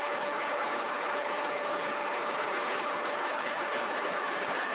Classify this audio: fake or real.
fake